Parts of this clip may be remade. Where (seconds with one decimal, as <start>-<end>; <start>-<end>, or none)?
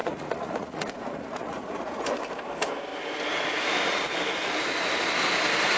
0.0-2.0